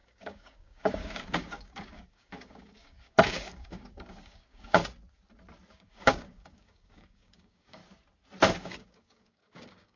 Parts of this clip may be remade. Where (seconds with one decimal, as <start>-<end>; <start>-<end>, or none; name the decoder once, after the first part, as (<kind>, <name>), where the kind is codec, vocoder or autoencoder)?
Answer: 0.0-4.8 (codec, DAC); 5.7-7.8; 8.6-10.0